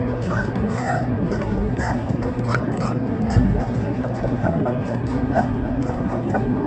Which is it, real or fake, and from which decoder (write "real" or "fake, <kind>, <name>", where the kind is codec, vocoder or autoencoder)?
fake, codec, SNAC